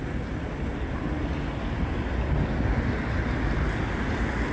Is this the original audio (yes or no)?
yes